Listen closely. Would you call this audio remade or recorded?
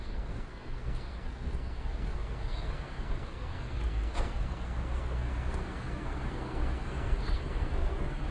remade